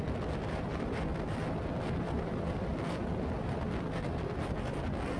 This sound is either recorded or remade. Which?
recorded